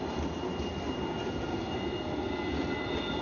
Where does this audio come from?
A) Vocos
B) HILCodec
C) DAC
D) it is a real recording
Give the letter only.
D